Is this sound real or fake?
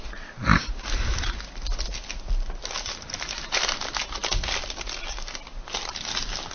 real